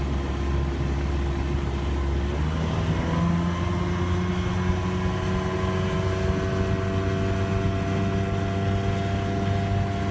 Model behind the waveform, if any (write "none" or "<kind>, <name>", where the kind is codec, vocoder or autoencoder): none